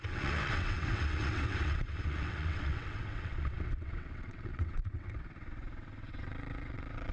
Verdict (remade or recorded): remade